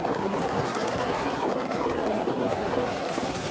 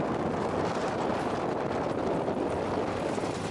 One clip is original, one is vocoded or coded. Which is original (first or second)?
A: second